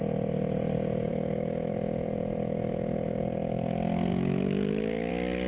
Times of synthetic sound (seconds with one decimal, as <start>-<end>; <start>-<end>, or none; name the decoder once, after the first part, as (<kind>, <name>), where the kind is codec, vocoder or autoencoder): 1.1-1.7 (autoencoder, DAC-VAE); 2.4-3.2; 4.1-5.1